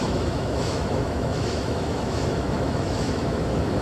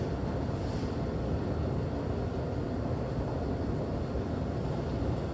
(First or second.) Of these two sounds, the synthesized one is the first